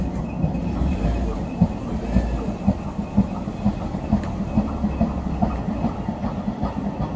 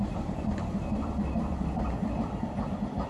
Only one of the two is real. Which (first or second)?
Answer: first